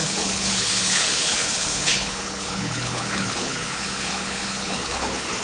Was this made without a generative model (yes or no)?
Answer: no